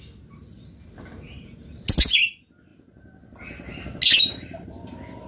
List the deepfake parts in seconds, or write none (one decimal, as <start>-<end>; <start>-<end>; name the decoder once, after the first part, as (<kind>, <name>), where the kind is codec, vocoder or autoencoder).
none